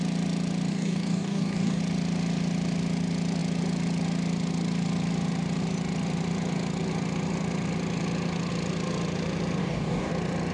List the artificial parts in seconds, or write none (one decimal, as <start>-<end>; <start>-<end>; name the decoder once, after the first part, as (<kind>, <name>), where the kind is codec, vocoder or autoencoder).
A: 0.7-1.8 (codec, DAC); 9.6-10.1